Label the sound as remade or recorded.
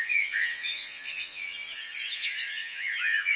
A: remade